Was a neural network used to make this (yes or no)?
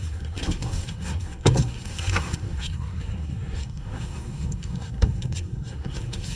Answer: yes